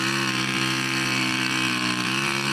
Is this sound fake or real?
fake